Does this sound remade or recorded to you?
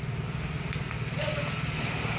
recorded